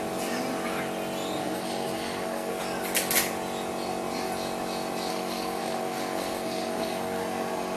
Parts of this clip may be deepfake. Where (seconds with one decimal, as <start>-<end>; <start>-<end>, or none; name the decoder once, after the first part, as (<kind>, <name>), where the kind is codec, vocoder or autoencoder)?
1.4-2.6 (codec, SNAC); 5.1-7.8